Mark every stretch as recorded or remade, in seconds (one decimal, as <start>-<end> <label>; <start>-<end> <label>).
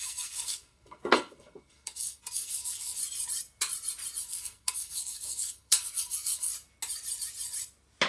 0.0-3.0 remade; 3.0-4.2 recorded; 4.2-6.5 remade; 6.5-8.1 recorded